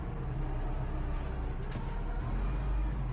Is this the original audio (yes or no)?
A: yes